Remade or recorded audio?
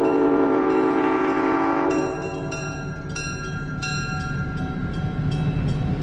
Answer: remade